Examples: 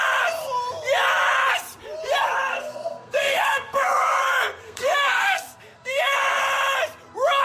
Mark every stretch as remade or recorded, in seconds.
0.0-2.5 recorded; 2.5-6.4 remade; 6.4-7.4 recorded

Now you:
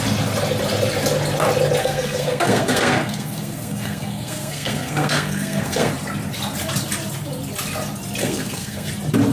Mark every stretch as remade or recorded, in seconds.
0.0-1.8 recorded; 1.8-5.9 remade; 5.9-8.2 recorded; 8.2-8.9 remade; 8.9-9.3 recorded

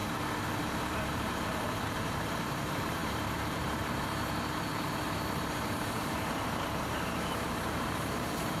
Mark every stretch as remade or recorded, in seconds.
0.0-0.6 recorded; 0.6-8.6 remade

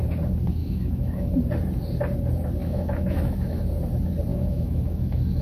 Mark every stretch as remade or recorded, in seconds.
0.0-0.6 recorded; 0.6-1.3 remade; 1.3-2.6 recorded; 2.6-3.6 remade; 3.6-4.3 recorded; 4.3-5.4 remade

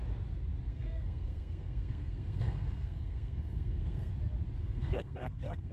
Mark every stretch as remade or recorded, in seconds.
0.0-0.7 recorded; 0.7-4.1 remade; 4.1-4.6 recorded; 4.6-5.7 remade

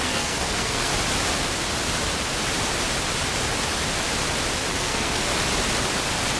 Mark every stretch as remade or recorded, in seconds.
0.0-0.9 remade; 0.9-4.7 recorded; 4.7-5.3 remade; 5.3-6.4 recorded

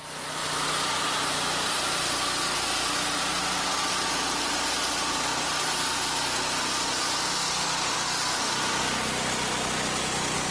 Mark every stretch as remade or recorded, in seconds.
0.0-10.5 recorded

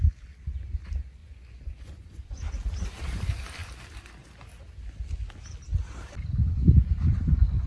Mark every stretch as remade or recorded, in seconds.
0.0-1.2 recorded; 1.2-2.4 remade; 2.4-6.4 recorded; 6.4-7.7 remade